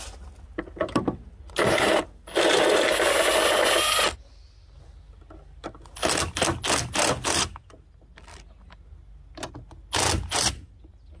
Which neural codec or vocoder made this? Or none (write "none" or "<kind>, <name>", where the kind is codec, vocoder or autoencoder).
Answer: none